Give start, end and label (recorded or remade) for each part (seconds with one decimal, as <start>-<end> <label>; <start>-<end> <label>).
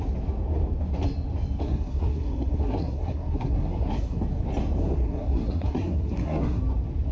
0.0-1.6 recorded; 1.6-4.2 remade; 4.2-4.8 recorded; 4.8-6.6 remade; 6.6-7.1 recorded